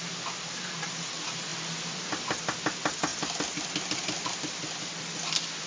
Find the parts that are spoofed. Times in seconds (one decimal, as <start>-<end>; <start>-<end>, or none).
none